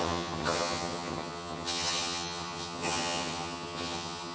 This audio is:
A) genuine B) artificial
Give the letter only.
B